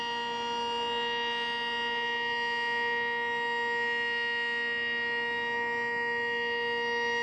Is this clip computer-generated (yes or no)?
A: no